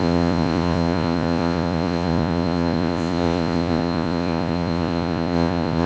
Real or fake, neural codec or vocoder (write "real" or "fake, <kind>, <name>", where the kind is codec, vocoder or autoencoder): fake, vocoder, Vocos